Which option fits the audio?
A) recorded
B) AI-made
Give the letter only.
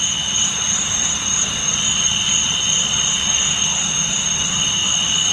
A